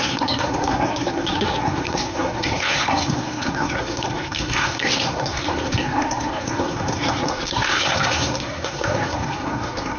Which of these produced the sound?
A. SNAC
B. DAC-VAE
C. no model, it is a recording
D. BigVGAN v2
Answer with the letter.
A